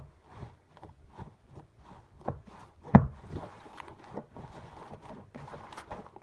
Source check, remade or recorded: remade